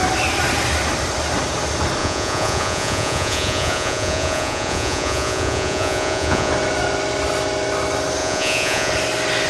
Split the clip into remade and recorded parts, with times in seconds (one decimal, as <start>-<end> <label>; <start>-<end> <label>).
0.0-2.0 recorded; 2.0-6.5 remade; 6.5-8.2 recorded; 8.2-8.9 remade; 8.9-9.5 recorded